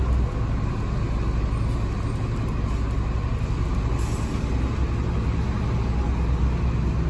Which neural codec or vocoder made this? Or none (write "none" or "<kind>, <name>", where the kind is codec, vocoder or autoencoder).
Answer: none